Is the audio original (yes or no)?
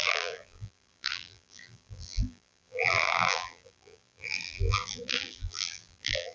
no